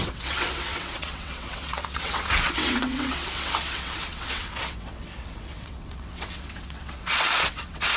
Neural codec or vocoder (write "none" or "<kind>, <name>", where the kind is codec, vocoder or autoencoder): vocoder, WaveNeXt